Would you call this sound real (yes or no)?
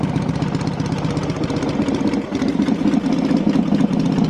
yes